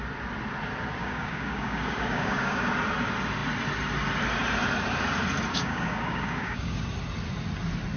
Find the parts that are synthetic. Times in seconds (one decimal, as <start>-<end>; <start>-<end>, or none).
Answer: 1.0-2.7; 5.5-6.8